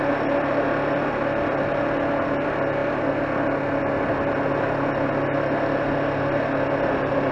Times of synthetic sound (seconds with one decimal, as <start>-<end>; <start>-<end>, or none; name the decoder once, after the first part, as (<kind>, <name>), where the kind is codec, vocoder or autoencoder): none